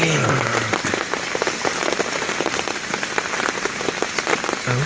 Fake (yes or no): no